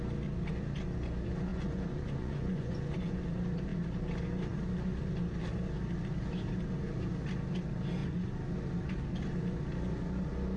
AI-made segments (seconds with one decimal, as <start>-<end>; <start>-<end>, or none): 1.5-3.2